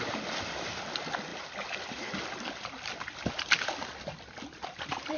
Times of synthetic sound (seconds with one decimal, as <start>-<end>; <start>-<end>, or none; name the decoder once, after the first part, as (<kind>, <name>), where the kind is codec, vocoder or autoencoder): none